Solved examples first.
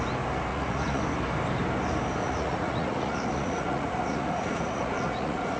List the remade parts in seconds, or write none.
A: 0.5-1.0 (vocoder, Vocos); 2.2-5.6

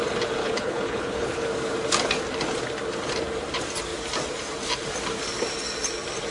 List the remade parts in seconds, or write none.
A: 0.4-1.5 (codec, HILCodec)

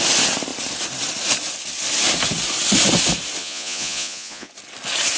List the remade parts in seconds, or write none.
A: 3.4-4.5 (vocoder, Vocos)

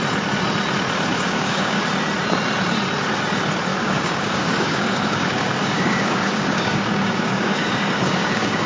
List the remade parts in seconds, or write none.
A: 1.1-1.8 (codec, DAC); 3.7-8.7